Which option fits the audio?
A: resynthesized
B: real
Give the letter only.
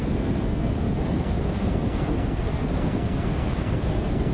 A